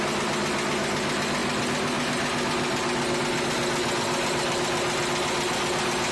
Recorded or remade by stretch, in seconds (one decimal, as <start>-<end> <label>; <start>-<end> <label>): 0.0-6.1 recorded